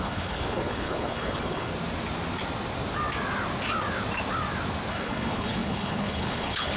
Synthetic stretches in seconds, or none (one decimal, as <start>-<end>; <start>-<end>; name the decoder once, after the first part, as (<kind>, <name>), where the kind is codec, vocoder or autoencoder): 0.0-1.7 (codec, HILCodec); 4.9-6.8